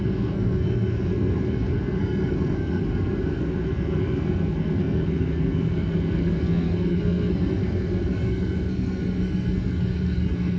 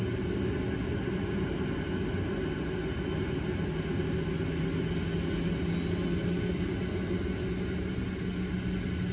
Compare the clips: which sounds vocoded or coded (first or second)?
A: first